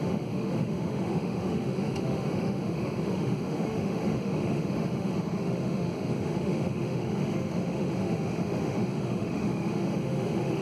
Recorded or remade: remade